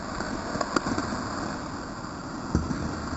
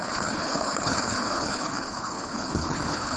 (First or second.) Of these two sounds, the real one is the first